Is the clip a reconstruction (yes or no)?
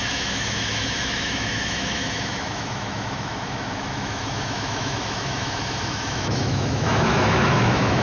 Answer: yes